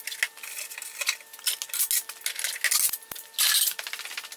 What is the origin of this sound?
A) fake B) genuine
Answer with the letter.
B